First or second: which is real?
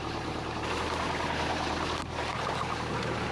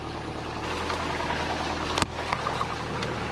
second